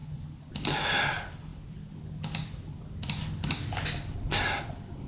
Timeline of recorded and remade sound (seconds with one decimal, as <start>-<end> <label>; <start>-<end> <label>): 0.0-5.1 recorded